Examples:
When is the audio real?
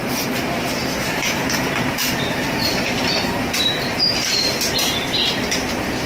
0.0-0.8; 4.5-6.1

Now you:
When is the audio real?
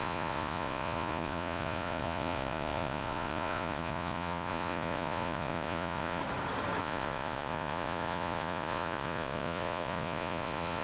6.2-6.8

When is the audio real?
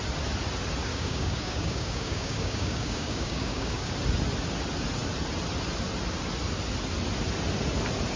0.0-0.9; 3.9-8.2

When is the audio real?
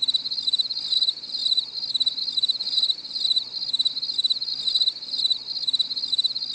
0.0-6.5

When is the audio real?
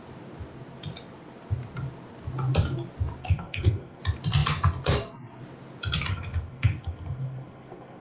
0.0-3.2; 4.0-6.1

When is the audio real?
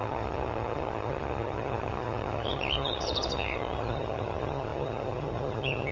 none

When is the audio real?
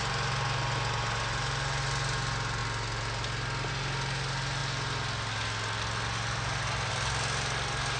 0.0-8.0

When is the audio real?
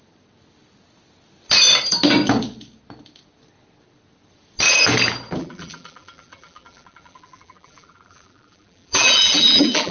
0.0-5.4